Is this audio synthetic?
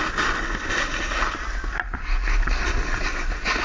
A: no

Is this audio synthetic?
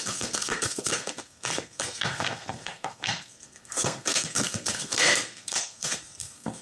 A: yes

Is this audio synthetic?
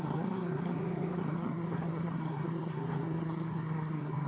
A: yes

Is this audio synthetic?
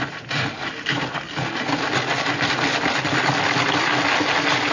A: no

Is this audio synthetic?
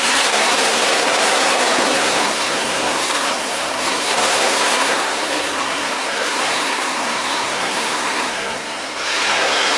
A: yes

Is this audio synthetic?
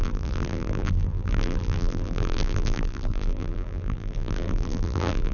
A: yes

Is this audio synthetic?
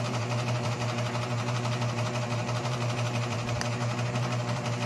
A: yes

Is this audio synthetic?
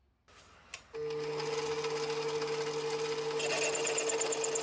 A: no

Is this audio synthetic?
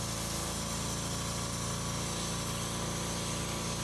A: no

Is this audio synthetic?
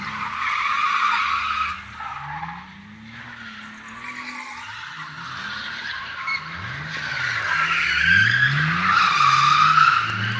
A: no